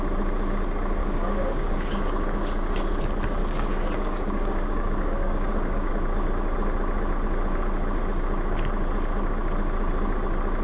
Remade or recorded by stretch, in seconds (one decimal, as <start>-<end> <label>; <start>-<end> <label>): 0.0-1.0 recorded; 1.0-3.0 remade; 3.0-3.4 recorded; 3.4-5.9 remade; 5.9-10.6 recorded